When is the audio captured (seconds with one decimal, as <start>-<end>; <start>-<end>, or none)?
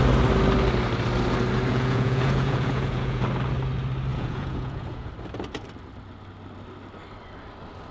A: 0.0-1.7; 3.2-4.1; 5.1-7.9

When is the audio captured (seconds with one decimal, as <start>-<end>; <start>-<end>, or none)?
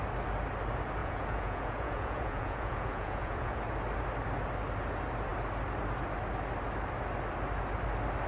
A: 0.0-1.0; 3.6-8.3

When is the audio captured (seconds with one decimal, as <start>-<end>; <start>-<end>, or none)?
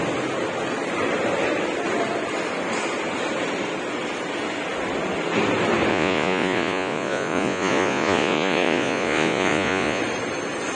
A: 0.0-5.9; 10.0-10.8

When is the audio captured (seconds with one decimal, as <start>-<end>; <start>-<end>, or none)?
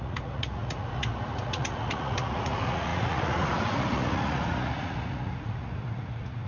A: none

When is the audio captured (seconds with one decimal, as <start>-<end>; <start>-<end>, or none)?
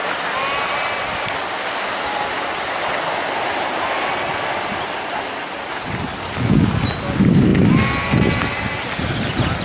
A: 0.0-9.6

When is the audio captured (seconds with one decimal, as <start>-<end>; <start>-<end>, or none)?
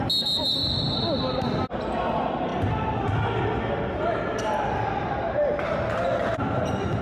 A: 0.0-7.0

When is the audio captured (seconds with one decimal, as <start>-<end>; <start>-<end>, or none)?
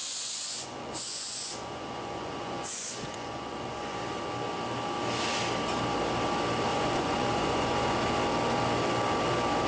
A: 4.0-6.7; 8.0-9.7